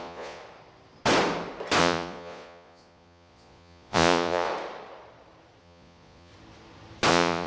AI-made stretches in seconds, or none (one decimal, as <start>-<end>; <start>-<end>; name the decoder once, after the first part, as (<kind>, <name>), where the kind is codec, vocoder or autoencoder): 0.0-0.4 (vocoder, Vocos); 1.8-4.5; 5.6-6.3; 7.1-7.5